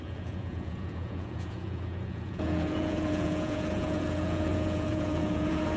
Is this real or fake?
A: fake